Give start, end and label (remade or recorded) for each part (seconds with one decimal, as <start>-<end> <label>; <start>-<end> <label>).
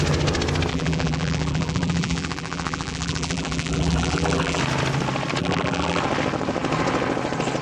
0.0-0.7 recorded; 0.7-4.6 remade; 4.6-5.4 recorded; 5.4-6.0 remade; 6.0-7.6 recorded